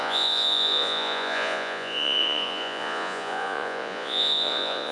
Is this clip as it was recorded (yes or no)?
no